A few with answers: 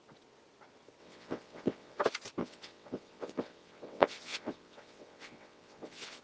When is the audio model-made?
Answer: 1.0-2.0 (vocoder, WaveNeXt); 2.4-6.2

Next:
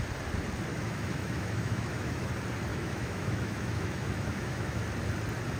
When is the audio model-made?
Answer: 0.7-2.3 (autoencoder, DAC-VAE); 2.7-4.8

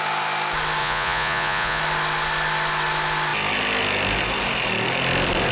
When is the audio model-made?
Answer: 0.8-1.8 (vocoder, Vocos)

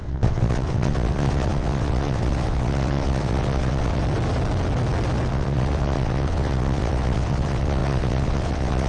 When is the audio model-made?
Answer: 0.0-4.0 (vocoder, WaveNeXt); 5.3-8.9